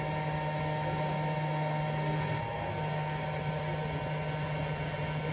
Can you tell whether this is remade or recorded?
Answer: recorded